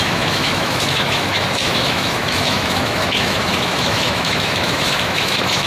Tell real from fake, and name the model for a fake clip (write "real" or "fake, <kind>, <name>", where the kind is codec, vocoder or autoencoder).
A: fake, autoencoder, DAC-VAE